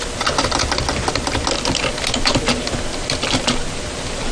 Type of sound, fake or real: real